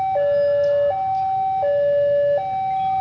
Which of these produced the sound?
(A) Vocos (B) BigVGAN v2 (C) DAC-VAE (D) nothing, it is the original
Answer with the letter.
D